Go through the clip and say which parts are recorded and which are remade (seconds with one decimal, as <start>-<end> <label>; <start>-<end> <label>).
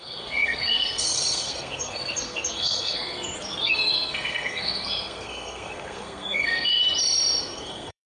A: 0.0-6.7 remade; 6.7-7.4 recorded; 7.4-8.2 remade